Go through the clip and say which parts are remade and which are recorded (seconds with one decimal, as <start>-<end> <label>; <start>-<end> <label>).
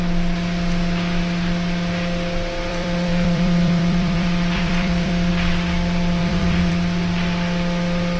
0.0-2.7 recorded; 2.7-5.3 remade; 5.3-6.2 recorded; 6.2-6.7 remade; 6.7-8.2 recorded